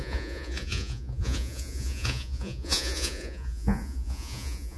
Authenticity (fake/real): fake